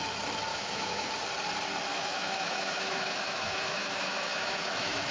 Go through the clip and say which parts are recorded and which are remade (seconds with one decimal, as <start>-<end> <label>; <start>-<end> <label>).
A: 0.0-0.5 recorded; 0.5-1.1 remade; 1.1-1.9 recorded; 1.9-5.1 remade